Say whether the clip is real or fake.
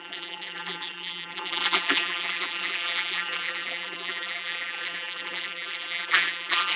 fake